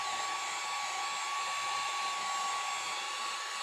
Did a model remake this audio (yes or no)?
no